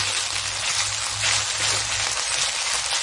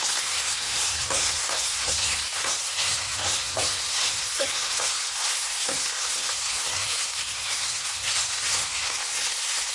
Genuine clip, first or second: first